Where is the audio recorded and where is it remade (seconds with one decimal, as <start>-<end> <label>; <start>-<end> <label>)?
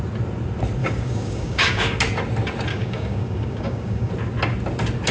0.0-0.8 recorded; 0.8-2.0 remade; 2.0-2.7 recorded; 2.7-4.1 remade; 4.1-5.1 recorded